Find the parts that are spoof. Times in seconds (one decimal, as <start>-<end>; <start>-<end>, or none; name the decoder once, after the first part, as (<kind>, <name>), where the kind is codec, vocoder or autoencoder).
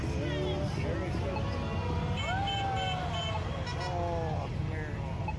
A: none